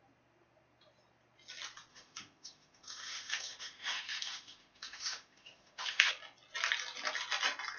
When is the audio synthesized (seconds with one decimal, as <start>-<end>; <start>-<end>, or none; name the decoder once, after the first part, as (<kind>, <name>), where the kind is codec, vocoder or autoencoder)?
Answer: 1.9-6.1 (autoencoder, DAC-VAE)